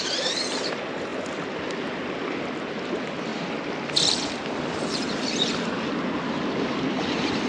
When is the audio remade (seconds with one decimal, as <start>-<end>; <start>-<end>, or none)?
none